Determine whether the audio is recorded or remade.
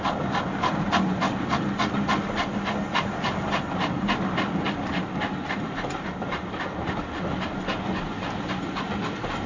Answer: recorded